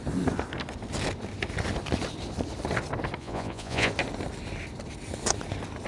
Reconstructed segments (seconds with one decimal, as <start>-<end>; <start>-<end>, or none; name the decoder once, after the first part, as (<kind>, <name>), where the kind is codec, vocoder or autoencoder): 3.2-3.9 (vocoder, Vocos)